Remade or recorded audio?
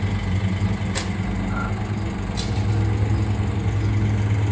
recorded